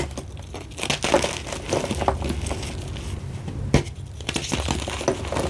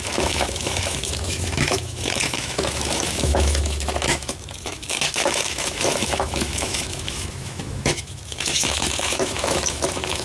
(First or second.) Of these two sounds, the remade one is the second